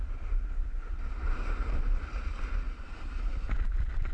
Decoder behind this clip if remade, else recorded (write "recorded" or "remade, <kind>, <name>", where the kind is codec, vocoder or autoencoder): recorded